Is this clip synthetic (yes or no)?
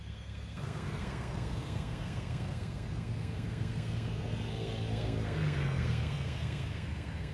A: yes